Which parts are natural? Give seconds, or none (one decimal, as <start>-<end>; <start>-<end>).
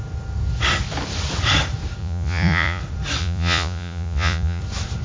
0.0-2.0; 2.8-3.2; 4.6-5.0